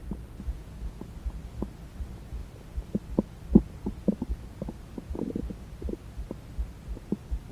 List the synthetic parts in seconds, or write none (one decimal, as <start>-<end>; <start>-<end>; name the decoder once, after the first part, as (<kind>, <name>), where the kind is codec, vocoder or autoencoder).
0.6-1.4 (vocoder, Vocos)